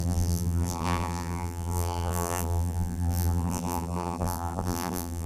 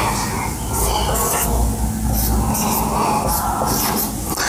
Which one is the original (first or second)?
second